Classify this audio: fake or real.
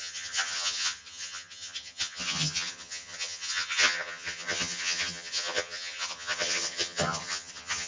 fake